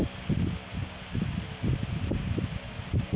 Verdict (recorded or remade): recorded